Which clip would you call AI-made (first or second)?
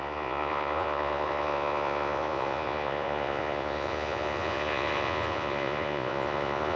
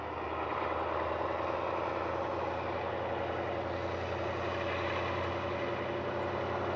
first